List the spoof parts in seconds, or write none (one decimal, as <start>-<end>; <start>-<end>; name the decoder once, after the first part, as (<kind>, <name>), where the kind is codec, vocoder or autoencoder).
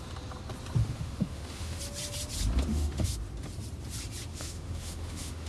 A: 0.8-1.8 (autoencoder, DAC-VAE); 2.7-3.2; 4.3-5.5